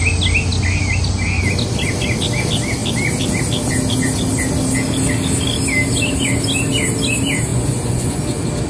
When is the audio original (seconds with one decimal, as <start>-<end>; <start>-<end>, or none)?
0.0-7.5; 8.2-8.7

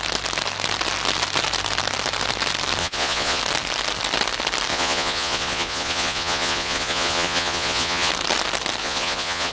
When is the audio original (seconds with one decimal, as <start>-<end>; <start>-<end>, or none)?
0.0-2.8; 3.4-4.7; 8.1-8.8

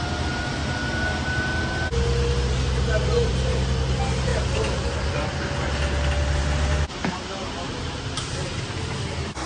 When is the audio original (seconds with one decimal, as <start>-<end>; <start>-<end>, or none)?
0.0-9.5

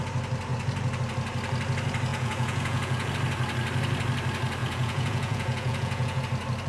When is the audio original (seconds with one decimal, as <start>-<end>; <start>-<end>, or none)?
0.0-2.1; 3.1-4.6; 6.2-6.7

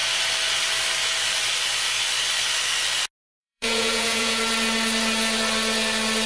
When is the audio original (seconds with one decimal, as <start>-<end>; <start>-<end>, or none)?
0.0-3.4; 4.4-6.3

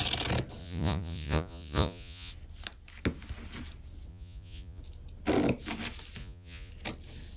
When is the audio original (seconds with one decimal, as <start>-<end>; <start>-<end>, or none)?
0.0-0.6; 2.3-4.1; 4.8-6.2; 6.7-7.4

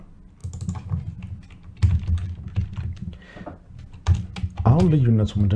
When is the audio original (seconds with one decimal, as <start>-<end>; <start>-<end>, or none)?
0.0-5.6

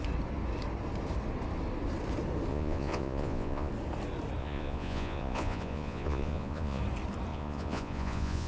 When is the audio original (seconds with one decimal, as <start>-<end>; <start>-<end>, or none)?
0.0-2.5; 3.7-4.4; 6.8-7.3